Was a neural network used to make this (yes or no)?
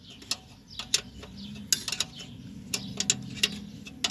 no